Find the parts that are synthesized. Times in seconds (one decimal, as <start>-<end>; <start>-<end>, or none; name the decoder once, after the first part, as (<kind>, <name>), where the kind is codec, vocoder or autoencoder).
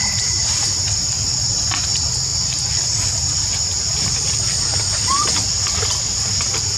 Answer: 0.4-1.2 (vocoder, BigVGAN v2)